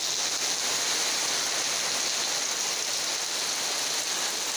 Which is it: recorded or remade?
recorded